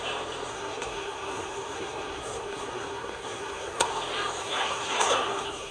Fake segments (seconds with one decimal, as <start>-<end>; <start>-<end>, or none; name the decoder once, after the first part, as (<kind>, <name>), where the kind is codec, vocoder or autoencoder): 0.5-3.9 (codec, SNAC); 4.4-5.7